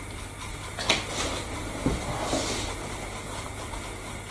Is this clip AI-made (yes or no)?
no